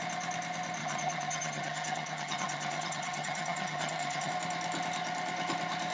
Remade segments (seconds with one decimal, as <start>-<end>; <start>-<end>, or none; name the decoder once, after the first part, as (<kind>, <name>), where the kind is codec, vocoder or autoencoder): 0.8-4.3 (vocoder, HiFi-GAN)